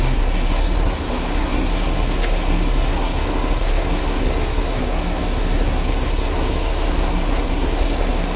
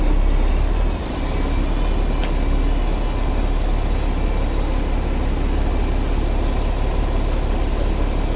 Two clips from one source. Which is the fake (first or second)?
first